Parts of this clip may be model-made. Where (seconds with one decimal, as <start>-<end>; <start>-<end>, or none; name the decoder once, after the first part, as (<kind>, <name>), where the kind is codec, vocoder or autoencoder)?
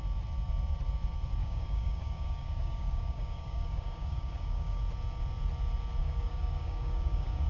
1.4-4.8 (codec, DAC); 6.0-7.5